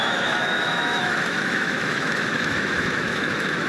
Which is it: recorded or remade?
remade